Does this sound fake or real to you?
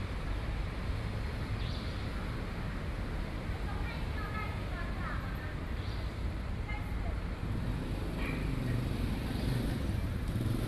fake